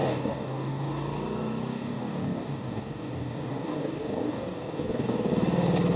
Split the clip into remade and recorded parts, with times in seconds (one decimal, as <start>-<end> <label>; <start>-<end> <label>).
0.0-0.9 remade; 0.9-1.7 recorded; 1.7-5.3 remade; 5.3-6.0 recorded